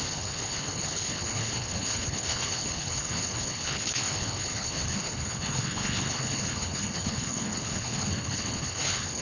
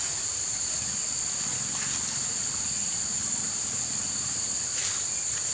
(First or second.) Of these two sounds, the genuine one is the second